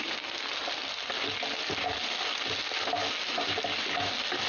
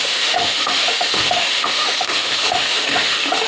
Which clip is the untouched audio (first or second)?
first